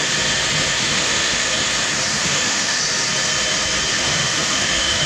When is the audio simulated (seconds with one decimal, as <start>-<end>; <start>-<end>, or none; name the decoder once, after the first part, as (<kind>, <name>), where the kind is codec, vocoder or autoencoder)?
0.8-1.5 (autoencoder, DAC-VAE); 2.1-2.8; 3.9-5.1

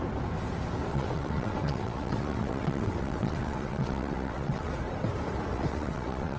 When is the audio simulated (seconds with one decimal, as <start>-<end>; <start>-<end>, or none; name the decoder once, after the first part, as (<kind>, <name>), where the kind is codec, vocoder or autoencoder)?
0.9-4.7 (vocoder, WaveNeXt); 5.5-6.4

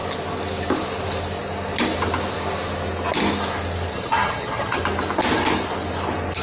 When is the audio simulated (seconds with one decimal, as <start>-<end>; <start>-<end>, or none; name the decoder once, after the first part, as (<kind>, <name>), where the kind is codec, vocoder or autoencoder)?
3.9-4.8 (vocoder, HiFi-GAN)

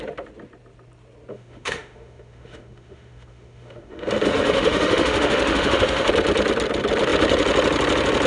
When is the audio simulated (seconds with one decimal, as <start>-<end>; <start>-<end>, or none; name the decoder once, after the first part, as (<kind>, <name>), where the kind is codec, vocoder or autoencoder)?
1.3-6.1 (autoencoder, DAC-VAE)

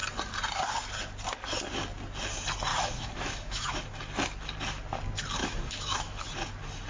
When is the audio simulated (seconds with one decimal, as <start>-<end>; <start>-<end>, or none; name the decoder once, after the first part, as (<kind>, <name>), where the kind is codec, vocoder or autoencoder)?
2.7-3.8 (autoencoder, DAC-VAE); 5.4-6.3